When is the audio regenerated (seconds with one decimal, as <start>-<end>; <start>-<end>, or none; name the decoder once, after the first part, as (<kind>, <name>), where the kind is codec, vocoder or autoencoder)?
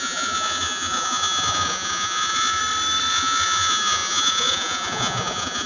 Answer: 0.0-2.6 (vocoder, Vocos); 3.1-5.7